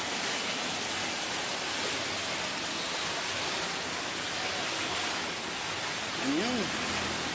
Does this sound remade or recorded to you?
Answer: recorded